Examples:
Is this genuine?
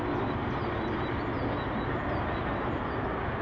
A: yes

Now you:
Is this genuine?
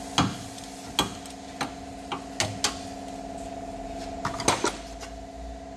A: yes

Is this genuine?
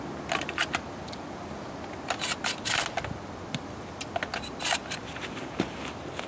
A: yes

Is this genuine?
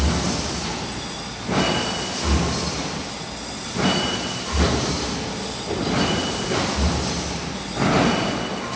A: yes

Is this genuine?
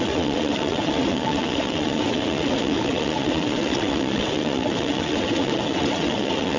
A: no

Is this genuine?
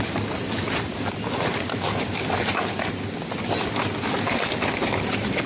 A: yes